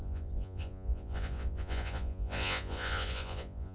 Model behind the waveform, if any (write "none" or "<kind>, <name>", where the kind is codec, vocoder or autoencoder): vocoder, Vocos